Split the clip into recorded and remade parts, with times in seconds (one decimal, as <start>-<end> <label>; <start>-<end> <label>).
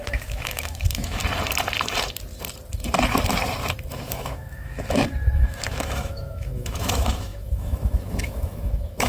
0.0-1.2 remade; 1.2-3.9 recorded; 3.9-9.1 remade